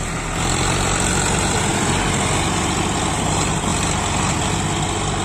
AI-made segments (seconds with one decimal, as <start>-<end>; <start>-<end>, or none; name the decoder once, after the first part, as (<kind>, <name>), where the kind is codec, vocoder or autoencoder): none